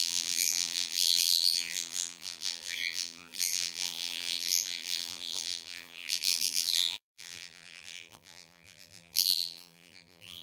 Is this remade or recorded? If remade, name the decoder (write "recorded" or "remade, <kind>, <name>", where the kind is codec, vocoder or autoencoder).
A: remade, vocoder, BigVGAN v2